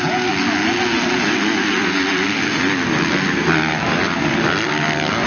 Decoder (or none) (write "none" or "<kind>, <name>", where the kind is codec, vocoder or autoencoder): none